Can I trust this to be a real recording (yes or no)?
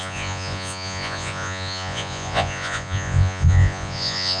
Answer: no